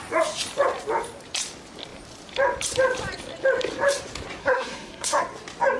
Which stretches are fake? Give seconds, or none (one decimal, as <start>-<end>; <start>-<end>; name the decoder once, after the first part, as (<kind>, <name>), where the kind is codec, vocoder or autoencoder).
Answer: 4.4-5.2 (codec, SNAC)